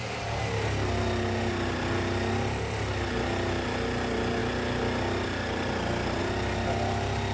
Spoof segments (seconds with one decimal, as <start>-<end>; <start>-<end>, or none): none